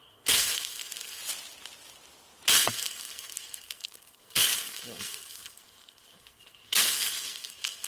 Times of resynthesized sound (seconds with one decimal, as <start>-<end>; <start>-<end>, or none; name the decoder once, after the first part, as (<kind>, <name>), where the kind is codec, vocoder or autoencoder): 0.0-1.2 (codec, SNAC); 2.5-7.9